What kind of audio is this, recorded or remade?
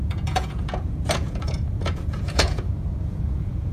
remade